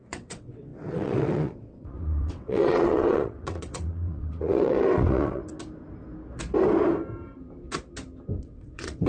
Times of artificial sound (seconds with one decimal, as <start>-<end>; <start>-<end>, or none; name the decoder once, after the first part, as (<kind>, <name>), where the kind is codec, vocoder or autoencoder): 0.0-5.4 (vocoder, WaveNeXt); 8.4-9.1